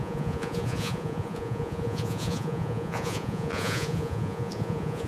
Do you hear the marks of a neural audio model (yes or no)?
yes